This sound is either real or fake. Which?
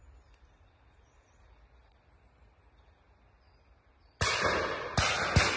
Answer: real